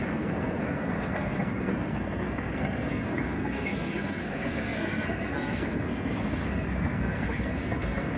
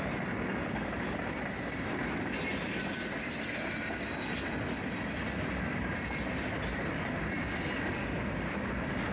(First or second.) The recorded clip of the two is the second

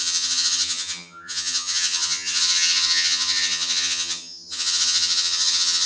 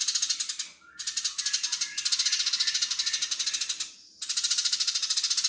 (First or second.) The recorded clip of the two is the second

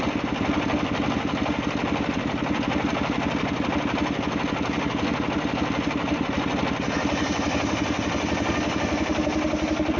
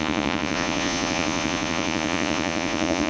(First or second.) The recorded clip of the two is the first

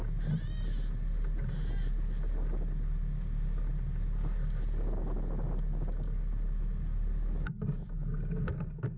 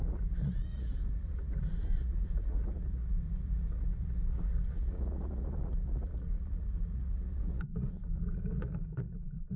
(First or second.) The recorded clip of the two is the first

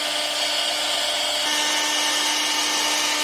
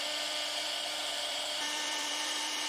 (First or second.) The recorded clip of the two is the first